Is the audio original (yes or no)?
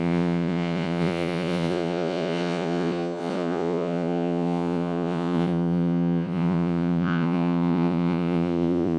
no